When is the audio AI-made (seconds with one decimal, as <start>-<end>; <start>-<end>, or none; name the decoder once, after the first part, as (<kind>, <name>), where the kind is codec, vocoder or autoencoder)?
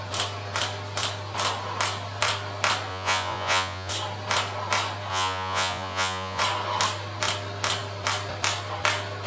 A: 2.9-3.9 (vocoder, Vocos); 5.1-6.4